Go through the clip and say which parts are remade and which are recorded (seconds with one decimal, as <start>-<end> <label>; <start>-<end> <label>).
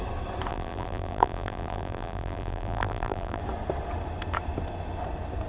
0.0-0.5 recorded; 0.5-3.4 remade; 3.4-5.5 recorded